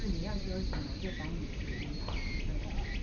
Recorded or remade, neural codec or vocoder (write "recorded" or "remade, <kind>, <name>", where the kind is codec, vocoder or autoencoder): recorded